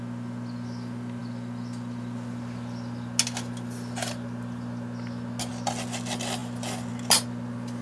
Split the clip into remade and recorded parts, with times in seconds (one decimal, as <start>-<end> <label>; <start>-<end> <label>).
0.0-7.8 recorded